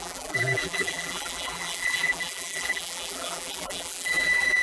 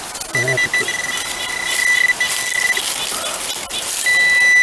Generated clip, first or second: first